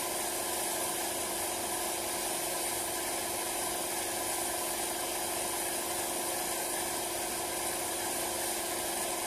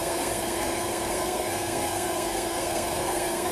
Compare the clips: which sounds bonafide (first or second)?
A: first